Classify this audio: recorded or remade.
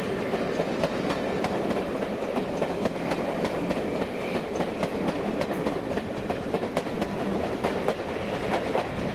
recorded